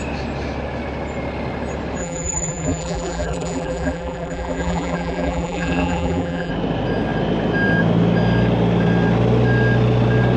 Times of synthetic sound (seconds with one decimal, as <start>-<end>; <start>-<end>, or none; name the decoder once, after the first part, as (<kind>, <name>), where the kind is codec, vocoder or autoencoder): 2.0-6.5 (vocoder, BigVGAN v2)